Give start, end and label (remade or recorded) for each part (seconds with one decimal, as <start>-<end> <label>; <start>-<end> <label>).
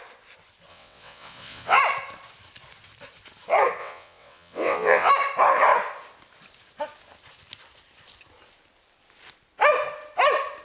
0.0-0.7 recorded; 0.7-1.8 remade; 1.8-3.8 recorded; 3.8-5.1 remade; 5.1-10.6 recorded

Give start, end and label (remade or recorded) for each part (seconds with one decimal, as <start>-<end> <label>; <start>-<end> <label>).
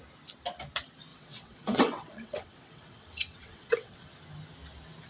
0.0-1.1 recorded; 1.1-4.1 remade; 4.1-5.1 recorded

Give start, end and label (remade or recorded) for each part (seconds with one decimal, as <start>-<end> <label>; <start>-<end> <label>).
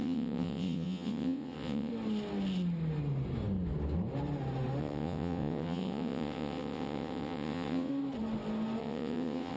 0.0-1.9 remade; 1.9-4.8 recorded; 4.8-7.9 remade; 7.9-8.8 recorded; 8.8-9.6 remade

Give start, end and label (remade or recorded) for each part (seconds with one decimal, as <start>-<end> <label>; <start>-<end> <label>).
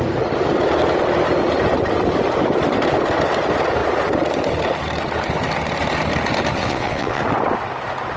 0.0-6.6 recorded; 6.6-7.2 remade; 7.2-8.2 recorded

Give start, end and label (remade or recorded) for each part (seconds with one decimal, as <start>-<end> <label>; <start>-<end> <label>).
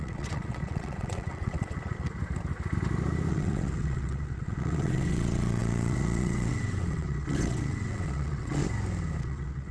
0.0-2.2 remade; 2.2-3.3 recorded; 3.3-8.6 remade; 8.6-9.2 recorded; 9.2-9.7 remade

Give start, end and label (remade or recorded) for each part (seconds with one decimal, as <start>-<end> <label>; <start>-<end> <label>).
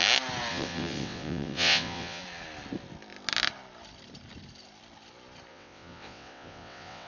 0.0-0.5 recorded; 0.5-2.2 remade; 2.2-5.5 recorded; 5.5-7.1 remade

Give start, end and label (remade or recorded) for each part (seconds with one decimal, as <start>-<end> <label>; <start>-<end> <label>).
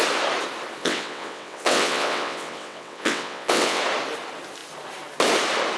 0.0-0.8 recorded; 0.8-3.8 remade; 3.8-5.8 recorded